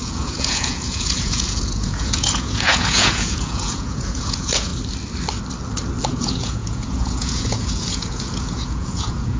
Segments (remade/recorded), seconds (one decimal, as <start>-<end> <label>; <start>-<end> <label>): 0.0-4.7 remade; 4.7-6.1 recorded; 6.1-9.4 remade